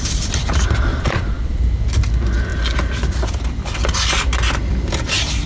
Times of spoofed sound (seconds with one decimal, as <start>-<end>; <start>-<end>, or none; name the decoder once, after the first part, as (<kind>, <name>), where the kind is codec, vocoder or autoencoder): 0.9-1.6 (vocoder, Vocos)